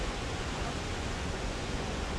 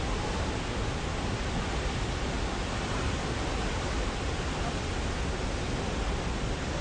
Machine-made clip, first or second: first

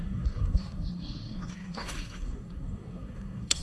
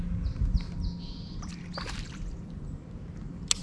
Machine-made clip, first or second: first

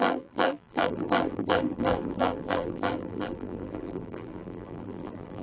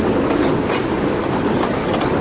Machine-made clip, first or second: first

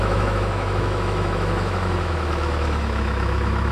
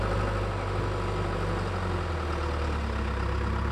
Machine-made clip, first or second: first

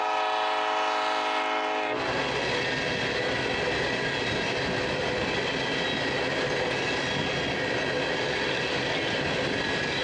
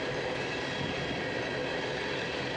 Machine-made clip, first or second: second